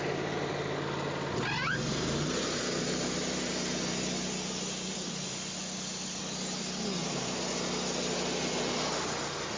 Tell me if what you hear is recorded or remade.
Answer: recorded